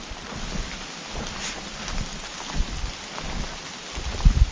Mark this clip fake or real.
real